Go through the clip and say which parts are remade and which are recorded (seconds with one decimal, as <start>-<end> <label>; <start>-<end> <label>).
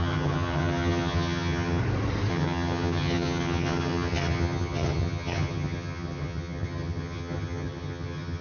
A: 0.0-1.8 remade; 1.8-2.3 recorded; 2.3-8.4 remade